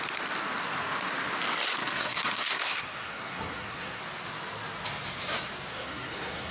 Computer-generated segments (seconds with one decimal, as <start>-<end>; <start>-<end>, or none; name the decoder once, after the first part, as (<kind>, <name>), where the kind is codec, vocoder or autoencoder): 1.8-4.0 (codec, SNAC); 5.7-6.5